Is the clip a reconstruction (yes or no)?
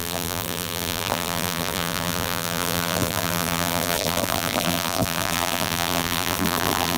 yes